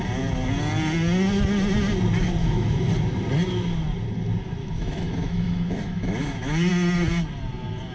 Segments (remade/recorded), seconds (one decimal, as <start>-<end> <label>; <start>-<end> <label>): 0.0-2.4 recorded; 2.4-2.9 remade; 2.9-4.6 recorded; 4.6-6.7 remade; 6.7-7.9 recorded